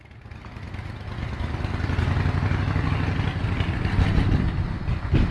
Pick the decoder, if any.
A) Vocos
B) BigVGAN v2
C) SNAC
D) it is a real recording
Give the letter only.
D